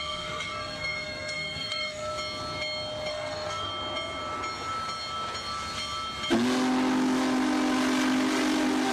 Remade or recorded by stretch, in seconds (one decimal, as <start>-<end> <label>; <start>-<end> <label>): 0.0-2.1 remade; 2.1-3.1 recorded; 3.1-3.7 remade; 3.7-8.9 recorded